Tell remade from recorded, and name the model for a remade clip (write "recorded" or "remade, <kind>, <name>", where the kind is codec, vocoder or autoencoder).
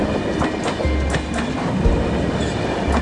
recorded